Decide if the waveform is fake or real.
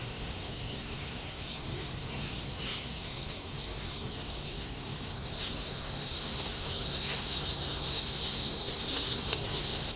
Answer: fake